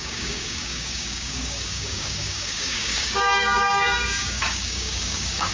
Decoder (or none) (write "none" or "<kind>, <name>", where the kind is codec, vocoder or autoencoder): codec, DAC